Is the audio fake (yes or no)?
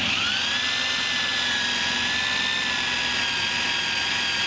no